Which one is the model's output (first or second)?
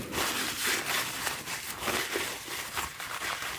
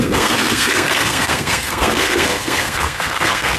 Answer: second